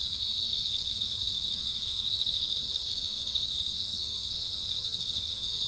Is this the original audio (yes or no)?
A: no